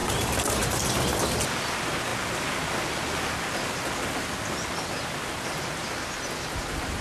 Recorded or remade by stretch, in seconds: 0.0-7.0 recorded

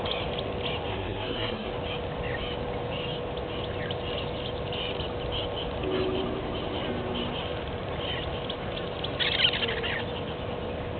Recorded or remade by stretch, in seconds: 0.0-0.9 recorded; 0.9-1.7 remade; 1.7-11.0 recorded